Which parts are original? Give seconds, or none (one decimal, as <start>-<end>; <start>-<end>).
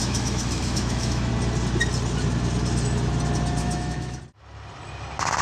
1.3-3.6; 4.2-5.4